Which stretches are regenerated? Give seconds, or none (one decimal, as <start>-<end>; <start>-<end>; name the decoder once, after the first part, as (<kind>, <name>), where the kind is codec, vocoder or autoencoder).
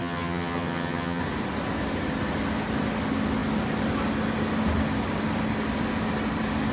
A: 0.0-1.2 (vocoder, HiFi-GAN)